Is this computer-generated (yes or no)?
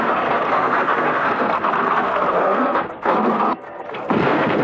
yes